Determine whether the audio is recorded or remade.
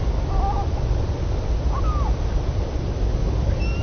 recorded